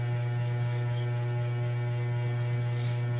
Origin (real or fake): real